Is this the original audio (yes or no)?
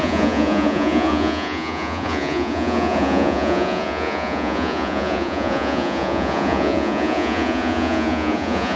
no